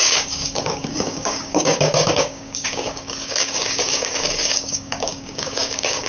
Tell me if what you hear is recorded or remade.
remade